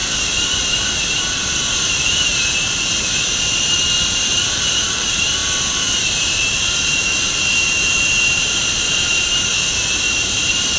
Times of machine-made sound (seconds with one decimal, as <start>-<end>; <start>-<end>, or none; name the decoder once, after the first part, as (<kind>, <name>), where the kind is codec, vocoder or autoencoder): 0.0-5.4 (vocoder, BigVGAN v2); 6.2-9.5; 10.2-10.8